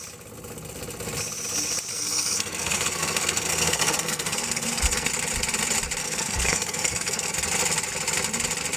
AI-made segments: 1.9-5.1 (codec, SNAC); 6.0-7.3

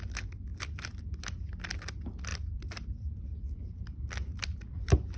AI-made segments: 2.3-5.2 (vocoder, BigVGAN v2)